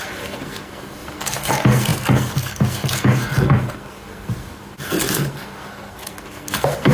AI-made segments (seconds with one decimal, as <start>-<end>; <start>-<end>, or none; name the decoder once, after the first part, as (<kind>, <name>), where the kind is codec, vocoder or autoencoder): 0.0-6.9 (codec, SNAC)